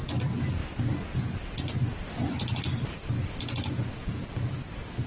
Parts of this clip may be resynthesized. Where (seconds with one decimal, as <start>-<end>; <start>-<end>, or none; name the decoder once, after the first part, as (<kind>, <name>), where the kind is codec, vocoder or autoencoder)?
none

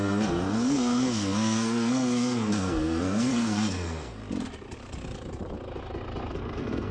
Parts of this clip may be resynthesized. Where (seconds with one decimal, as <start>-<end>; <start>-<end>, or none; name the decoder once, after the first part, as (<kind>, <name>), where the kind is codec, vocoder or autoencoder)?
0.0-4.2 (codec, SNAC); 6.3-6.9

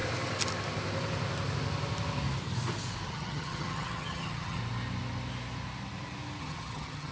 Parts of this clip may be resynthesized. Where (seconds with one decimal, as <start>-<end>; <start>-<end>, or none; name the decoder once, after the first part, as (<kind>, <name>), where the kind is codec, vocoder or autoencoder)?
3.1-4.6 (vocoder, HiFi-GAN); 6.4-7.1